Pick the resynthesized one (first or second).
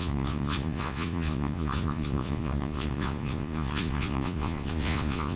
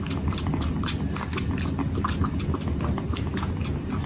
first